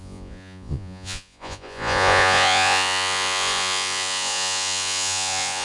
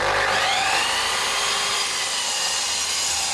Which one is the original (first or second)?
second